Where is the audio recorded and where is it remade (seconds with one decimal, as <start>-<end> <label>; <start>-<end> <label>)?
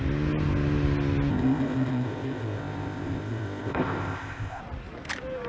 0.0-1.3 recorded; 1.3-4.6 remade; 4.6-5.5 recorded